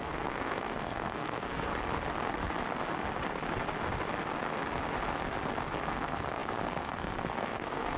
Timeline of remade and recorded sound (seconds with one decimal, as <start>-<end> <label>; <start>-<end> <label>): 0.0-1.7 remade; 1.7-5.8 recorded; 5.8-8.0 remade